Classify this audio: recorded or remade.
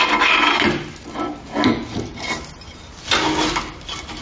recorded